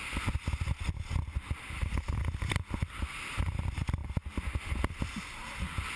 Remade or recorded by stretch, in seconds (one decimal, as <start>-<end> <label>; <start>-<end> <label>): 0.0-6.0 recorded